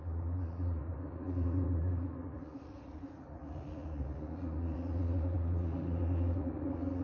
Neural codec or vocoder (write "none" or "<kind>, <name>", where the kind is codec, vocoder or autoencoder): vocoder, Vocos